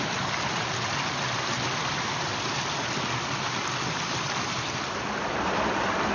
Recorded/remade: recorded